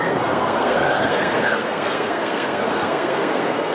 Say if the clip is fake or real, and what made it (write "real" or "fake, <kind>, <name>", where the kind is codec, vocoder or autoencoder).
fake, codec, SNAC